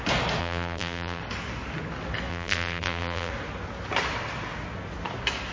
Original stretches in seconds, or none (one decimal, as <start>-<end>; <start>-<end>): 0.0-0.4; 1.2-2.3; 3.3-5.5